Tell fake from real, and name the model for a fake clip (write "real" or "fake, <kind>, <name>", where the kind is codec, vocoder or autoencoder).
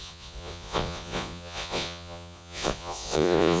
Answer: fake, vocoder, Vocos